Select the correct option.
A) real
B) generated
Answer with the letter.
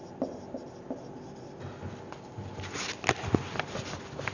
A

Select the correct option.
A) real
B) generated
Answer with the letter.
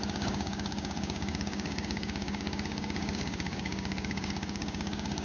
B